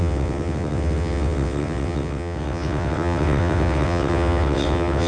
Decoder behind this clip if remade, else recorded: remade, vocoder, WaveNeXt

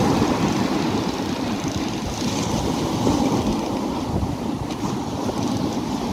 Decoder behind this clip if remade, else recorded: recorded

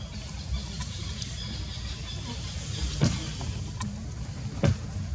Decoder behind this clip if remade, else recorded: recorded